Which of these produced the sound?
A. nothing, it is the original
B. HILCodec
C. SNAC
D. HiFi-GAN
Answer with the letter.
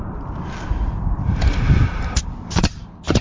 A